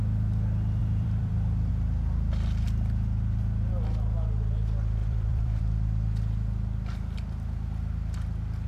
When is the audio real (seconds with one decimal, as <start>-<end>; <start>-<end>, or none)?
0.0-0.8; 1.7-5.0; 5.6-8.7